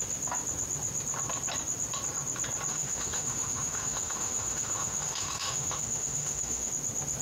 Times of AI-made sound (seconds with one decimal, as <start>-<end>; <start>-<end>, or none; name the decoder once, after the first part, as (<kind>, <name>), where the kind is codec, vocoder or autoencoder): 2.7-6.7 (autoencoder, DAC-VAE)